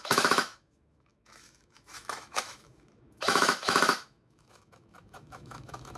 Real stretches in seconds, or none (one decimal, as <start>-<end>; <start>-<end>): none